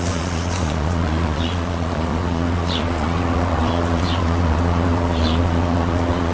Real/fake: fake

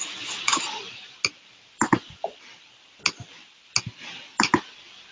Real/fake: real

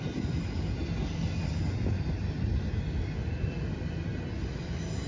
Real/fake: real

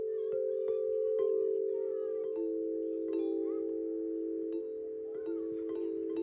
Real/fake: real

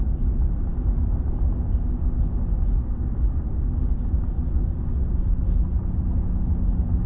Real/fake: real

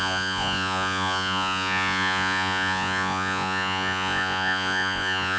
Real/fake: fake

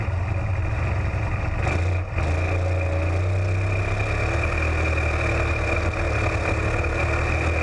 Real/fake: real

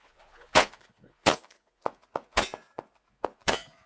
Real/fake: fake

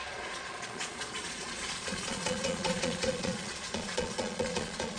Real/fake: fake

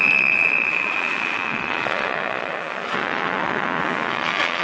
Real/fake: fake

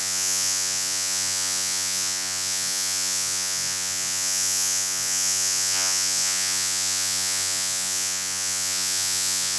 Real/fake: fake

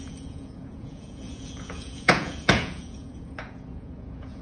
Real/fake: fake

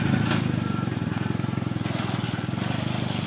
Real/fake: real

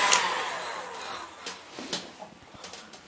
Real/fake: real